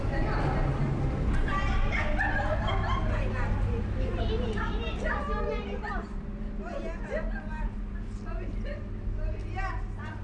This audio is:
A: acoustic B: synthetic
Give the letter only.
A